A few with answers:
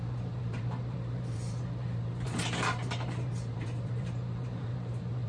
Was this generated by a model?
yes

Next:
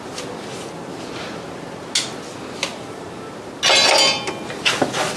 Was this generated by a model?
no